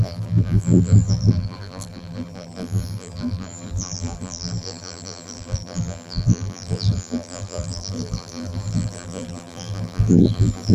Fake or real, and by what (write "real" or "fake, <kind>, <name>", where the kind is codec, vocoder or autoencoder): fake, vocoder, BigVGAN v2